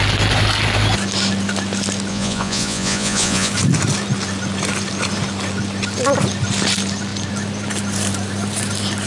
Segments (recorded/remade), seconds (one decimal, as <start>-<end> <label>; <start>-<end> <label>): 0.0-2.1 recorded; 2.1-3.5 remade; 3.5-9.1 recorded